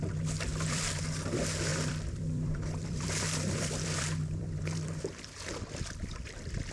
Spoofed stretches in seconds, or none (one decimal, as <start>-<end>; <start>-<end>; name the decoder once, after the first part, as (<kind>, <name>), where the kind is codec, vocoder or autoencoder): 0.5-1.0 (vocoder, BigVGAN v2); 1.7-5.2